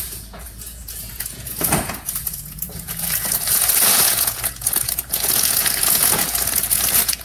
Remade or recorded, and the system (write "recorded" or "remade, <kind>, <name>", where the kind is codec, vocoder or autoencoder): remade, vocoder, Vocos